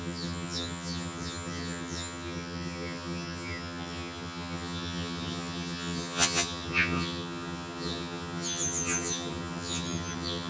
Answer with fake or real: fake